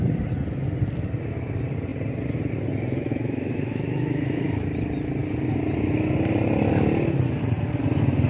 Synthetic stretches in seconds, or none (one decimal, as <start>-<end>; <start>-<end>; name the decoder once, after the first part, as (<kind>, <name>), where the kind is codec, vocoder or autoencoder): 3.1-4.6 (autoencoder, DAC-VAE)